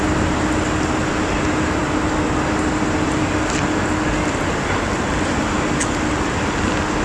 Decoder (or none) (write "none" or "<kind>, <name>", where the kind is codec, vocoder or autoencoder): none